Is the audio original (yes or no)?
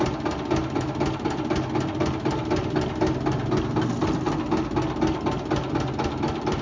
yes